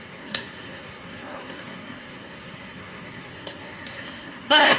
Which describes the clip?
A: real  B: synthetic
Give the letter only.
B